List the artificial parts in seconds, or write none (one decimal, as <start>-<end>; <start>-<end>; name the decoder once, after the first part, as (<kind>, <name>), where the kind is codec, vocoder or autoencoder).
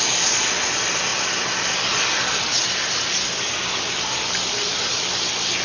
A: none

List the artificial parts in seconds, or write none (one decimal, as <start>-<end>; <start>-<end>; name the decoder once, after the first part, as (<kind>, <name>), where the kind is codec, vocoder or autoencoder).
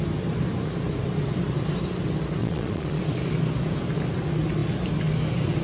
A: 2.4-3.0 (vocoder, Vocos)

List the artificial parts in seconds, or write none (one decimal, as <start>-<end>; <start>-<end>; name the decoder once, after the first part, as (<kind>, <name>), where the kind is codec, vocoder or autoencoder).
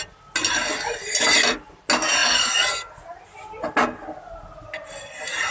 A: none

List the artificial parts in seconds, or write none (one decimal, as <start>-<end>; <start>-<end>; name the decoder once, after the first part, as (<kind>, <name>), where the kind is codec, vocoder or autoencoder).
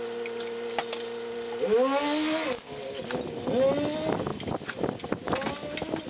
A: none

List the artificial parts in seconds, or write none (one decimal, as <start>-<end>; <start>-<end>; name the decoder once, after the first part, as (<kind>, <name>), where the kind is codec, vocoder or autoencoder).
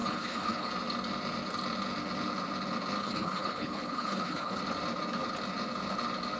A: 0.0-0.7 (codec, HILCodec); 3.0-4.6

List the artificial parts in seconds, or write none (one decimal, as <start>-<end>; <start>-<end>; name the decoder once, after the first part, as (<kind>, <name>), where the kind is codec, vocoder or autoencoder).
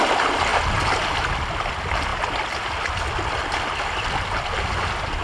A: none